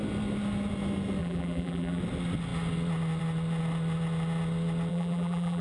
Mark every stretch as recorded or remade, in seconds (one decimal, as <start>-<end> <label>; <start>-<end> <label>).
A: 0.0-1.2 recorded; 1.2-2.0 remade; 2.0-4.9 recorded; 4.9-5.6 remade